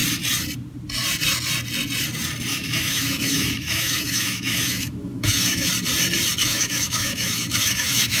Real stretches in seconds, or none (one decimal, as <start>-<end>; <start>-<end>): 0.0-2.5; 5.7-6.4